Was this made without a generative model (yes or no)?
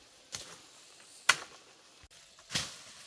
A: yes